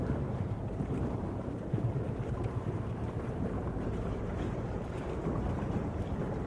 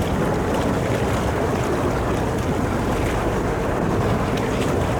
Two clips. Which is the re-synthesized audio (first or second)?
first